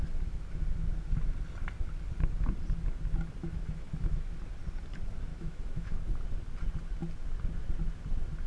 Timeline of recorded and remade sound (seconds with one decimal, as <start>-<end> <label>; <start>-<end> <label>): 0.0-3.4 recorded; 3.4-4.2 remade; 4.2-5.3 recorded; 5.3-6.0 remade; 6.0-8.5 recorded